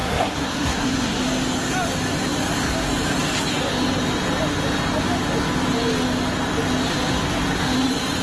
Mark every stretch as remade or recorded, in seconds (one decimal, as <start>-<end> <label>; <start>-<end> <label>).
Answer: 0.0-1.2 remade; 1.2-8.2 recorded